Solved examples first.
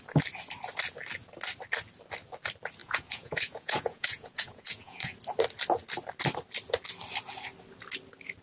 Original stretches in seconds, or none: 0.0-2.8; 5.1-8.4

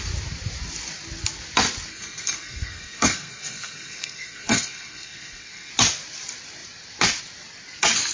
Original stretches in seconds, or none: 0.0-1.9; 5.7-8.1

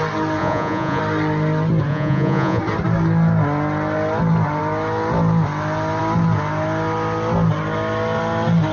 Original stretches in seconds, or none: 0.0-0.4; 1.0-1.9; 2.6-8.7

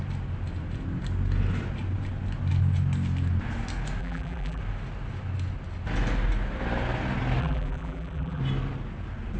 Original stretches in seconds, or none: 0.0-4.0; 4.6-7.4; 8.4-9.4

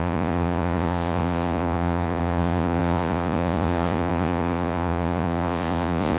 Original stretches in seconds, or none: none

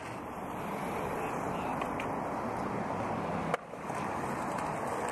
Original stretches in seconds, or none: 0.0-5.1

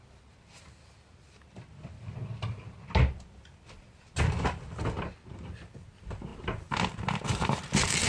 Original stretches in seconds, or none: 0.0-8.1